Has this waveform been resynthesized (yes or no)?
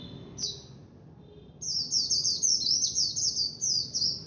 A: no